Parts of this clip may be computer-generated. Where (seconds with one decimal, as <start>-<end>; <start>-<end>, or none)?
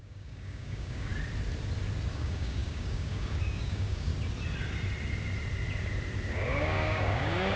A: 0.0-1.1; 2.1-4.1; 6.3-7.6